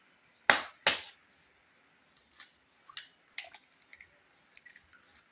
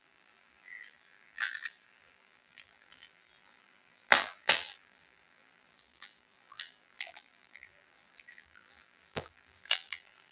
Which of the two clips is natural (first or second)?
first